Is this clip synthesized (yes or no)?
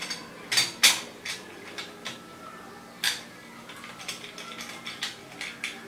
no